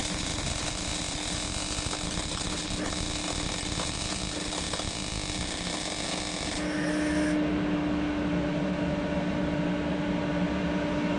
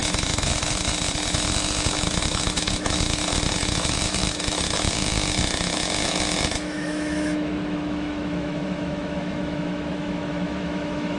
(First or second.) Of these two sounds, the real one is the first